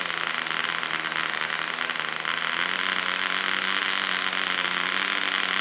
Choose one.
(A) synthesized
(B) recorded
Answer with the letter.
B